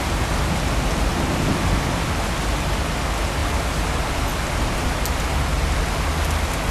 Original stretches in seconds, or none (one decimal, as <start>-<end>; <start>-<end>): 0.0-6.7